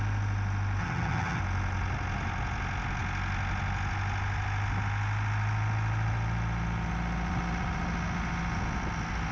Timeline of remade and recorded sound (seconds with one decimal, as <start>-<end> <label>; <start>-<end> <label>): 0.0-0.8 recorded; 0.8-1.4 remade; 1.4-9.3 recorded